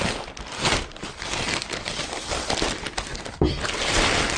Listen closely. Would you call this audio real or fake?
real